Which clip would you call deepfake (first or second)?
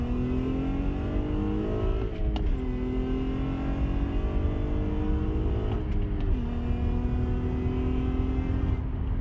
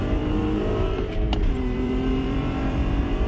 second